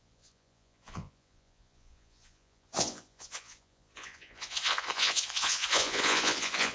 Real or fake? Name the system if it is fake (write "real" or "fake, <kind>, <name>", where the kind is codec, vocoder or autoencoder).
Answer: fake, vocoder, Vocos